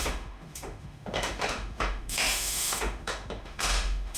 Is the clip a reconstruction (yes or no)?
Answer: yes